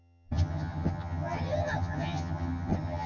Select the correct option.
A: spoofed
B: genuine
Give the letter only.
A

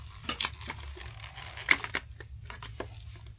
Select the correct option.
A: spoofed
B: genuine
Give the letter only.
B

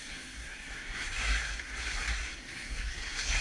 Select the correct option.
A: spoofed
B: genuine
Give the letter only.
A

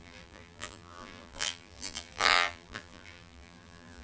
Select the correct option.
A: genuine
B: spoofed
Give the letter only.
B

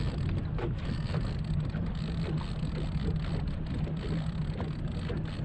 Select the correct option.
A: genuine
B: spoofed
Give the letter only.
A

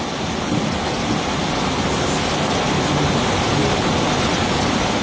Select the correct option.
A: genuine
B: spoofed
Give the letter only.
A